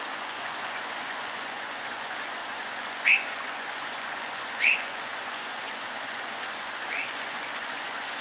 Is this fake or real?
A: fake